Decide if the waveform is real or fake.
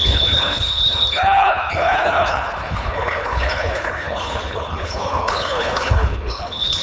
fake